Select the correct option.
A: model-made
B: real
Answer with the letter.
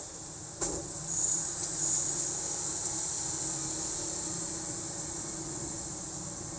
B